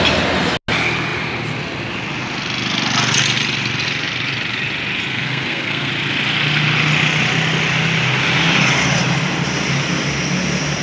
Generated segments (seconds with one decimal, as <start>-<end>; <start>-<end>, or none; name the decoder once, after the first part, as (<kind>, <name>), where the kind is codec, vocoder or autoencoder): 5.1-5.9 (codec, SNAC)